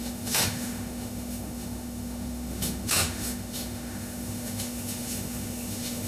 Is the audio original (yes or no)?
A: no